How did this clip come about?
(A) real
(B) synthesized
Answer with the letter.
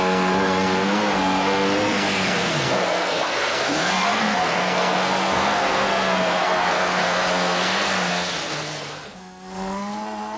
B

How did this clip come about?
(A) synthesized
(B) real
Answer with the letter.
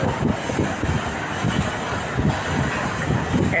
B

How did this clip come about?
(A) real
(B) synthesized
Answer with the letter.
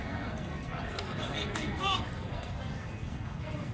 B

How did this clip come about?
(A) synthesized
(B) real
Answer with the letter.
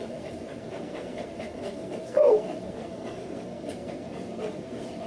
A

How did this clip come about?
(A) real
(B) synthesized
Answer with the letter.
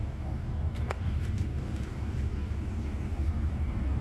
B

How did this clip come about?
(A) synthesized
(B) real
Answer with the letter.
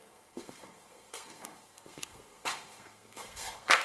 A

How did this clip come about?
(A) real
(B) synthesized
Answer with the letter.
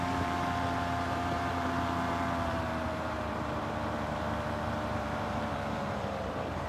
B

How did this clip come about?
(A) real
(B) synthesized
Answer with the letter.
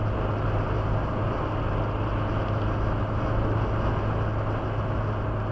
A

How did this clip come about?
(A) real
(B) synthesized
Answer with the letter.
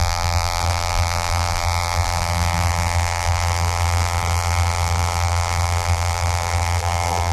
B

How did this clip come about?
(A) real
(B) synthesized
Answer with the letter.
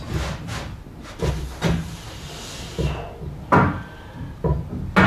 A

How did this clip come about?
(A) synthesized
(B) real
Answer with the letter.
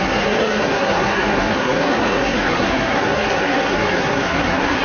A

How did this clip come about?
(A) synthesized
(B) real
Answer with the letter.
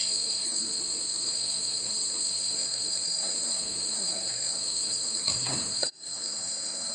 A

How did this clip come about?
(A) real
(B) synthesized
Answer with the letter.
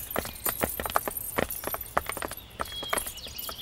A